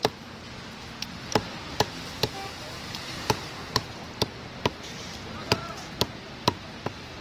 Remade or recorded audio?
remade